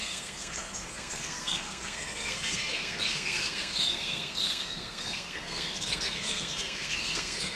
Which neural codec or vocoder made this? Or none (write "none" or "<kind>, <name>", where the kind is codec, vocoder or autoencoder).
codec, SNAC